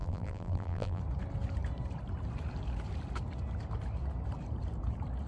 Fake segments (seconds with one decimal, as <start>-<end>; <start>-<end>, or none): 0.0-1.0